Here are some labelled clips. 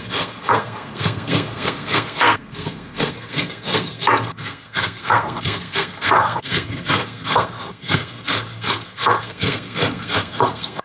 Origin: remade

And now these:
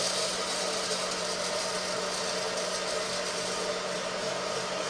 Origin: recorded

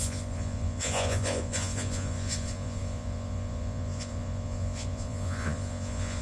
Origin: remade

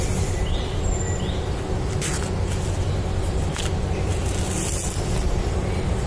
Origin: recorded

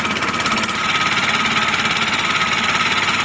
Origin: recorded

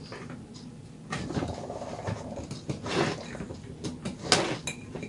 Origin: recorded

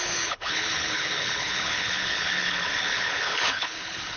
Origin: remade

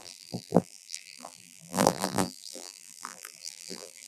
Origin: remade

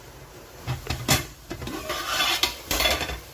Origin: recorded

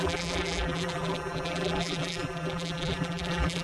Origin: remade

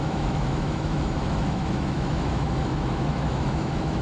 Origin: remade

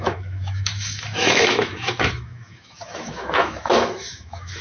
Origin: remade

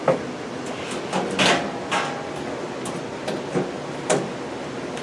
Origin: recorded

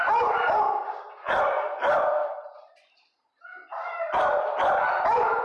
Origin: recorded